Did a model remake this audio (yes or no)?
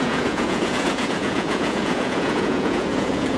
yes